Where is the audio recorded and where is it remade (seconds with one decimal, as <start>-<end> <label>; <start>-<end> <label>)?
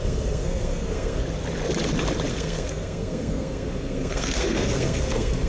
0.0-1.2 remade; 1.2-2.3 recorded; 2.3-5.5 remade